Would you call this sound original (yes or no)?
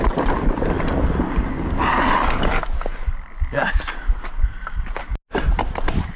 yes